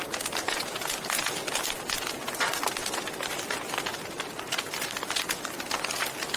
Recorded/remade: recorded